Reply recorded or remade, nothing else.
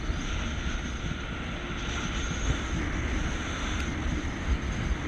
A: recorded